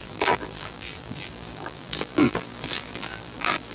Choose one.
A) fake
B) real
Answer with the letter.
A